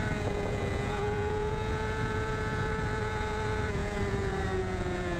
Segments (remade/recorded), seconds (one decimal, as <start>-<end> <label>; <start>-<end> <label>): 0.0-5.2 remade